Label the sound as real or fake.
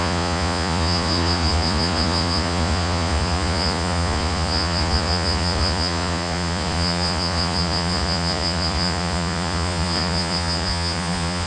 fake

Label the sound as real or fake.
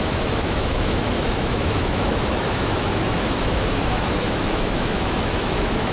fake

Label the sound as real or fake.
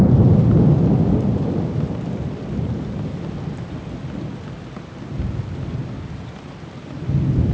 real